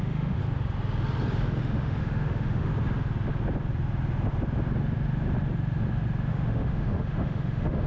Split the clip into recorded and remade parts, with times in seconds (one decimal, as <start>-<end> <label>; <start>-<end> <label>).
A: 0.0-0.4 remade; 0.4-1.6 recorded; 1.6-2.7 remade; 2.7-6.3 recorded; 6.3-7.9 remade